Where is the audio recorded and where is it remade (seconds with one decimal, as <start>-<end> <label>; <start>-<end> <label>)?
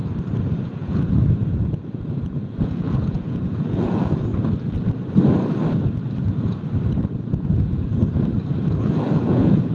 0.0-0.6 recorded; 0.6-4.3 remade; 4.3-7.2 recorded; 7.2-7.9 remade; 7.9-8.8 recorded; 8.8-9.7 remade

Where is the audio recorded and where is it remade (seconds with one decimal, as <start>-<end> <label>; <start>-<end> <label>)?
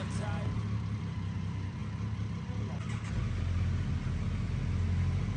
0.0-5.4 recorded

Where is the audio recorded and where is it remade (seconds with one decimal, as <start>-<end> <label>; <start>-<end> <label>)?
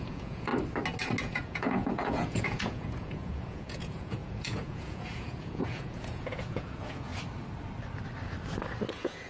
0.0-0.5 remade; 0.5-1.2 recorded; 1.2-7.1 remade; 7.1-8.9 recorded; 8.9-9.3 remade